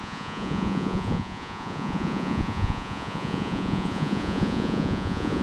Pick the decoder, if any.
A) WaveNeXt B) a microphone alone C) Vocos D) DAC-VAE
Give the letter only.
C